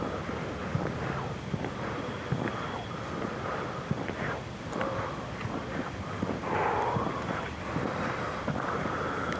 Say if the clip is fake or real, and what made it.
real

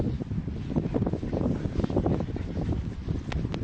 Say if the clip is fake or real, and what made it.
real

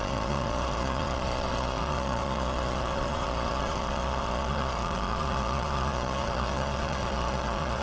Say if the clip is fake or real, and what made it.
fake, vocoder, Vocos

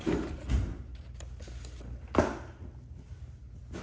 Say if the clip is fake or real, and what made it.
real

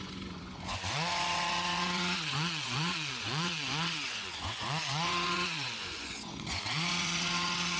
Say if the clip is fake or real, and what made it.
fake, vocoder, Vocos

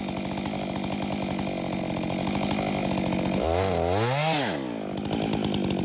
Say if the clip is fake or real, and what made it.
real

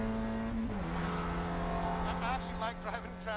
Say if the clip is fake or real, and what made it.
real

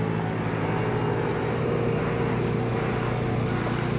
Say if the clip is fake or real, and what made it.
real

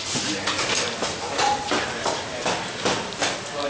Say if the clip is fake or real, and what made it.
real